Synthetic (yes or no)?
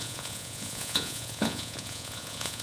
yes